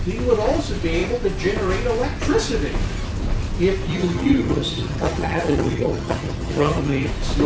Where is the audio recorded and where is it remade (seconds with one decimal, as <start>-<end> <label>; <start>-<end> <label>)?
0.0-3.9 recorded; 3.9-7.1 remade; 7.1-7.5 recorded